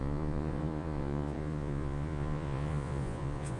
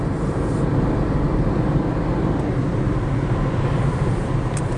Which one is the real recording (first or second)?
second